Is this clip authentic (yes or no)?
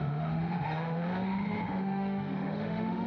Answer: no